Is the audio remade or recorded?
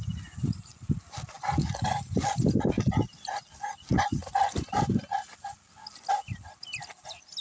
recorded